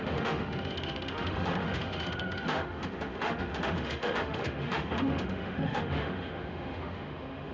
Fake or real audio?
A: fake